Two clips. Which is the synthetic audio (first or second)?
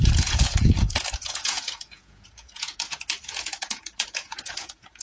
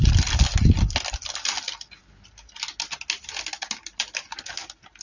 first